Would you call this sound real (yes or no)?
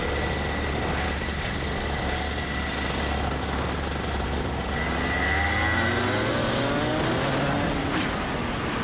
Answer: yes